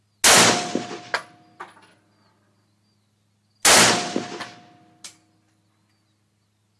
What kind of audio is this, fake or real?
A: real